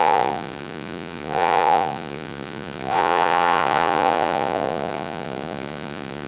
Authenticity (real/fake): fake